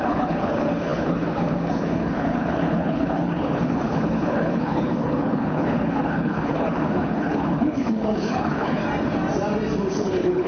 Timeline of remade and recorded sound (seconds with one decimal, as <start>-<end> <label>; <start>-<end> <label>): 0.0-8.8 remade; 8.8-9.9 recorded; 9.9-10.5 remade